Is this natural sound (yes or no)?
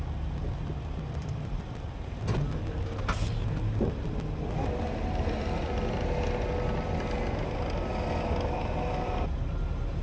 yes